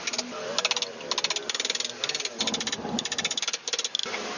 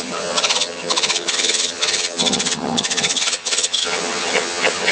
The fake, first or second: second